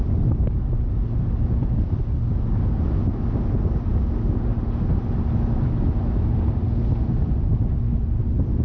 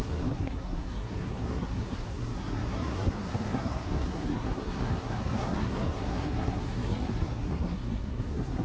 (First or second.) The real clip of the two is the first